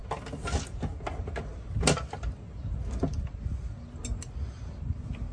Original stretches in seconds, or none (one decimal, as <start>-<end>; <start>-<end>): 0.0-5.3